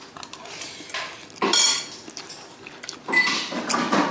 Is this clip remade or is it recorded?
recorded